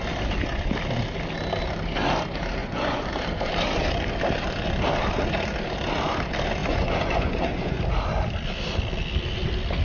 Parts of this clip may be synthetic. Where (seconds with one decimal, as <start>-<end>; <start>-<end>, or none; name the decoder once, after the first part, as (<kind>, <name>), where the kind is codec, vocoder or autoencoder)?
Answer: 2.6-3.1 (vocoder, Vocos); 6.6-7.8